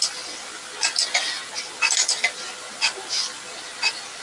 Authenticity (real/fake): real